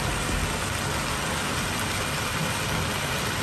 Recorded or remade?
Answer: recorded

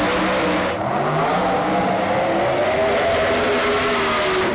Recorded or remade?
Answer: recorded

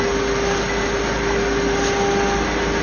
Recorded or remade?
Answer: recorded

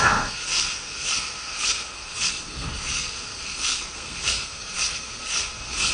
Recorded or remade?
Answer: remade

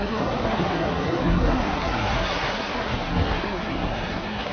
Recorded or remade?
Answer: remade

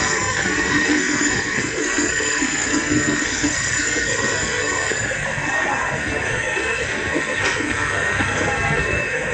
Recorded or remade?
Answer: remade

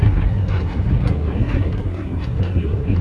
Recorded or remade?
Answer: remade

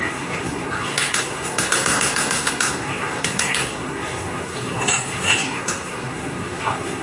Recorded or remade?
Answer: remade